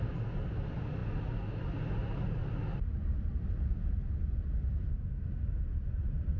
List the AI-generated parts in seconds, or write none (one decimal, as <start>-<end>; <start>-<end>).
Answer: none